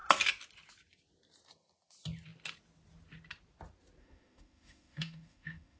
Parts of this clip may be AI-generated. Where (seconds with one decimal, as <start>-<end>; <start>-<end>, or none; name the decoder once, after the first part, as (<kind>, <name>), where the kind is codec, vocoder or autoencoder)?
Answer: 4.0-5.8 (autoencoder, DAC-VAE)